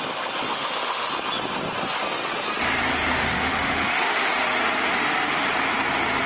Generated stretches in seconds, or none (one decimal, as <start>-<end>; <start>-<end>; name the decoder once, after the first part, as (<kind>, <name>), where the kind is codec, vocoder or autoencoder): 0.5-1.1 (autoencoder, DAC-VAE); 2.9-4.3